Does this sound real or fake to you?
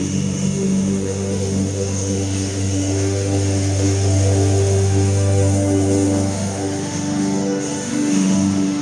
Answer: fake